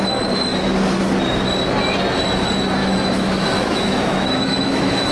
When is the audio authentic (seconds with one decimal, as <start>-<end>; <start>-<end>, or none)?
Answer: 0.0-2.8